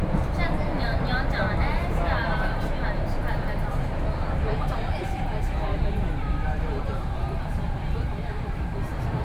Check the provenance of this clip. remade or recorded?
remade